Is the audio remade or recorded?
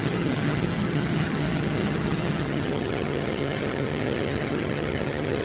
remade